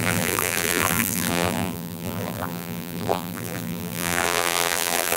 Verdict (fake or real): fake